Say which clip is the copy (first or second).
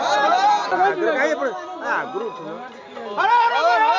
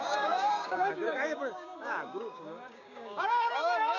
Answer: second